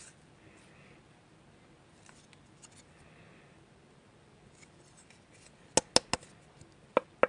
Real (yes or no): yes